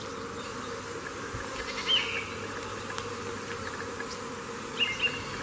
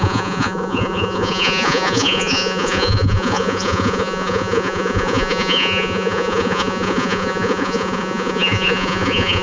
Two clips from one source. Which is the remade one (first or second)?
second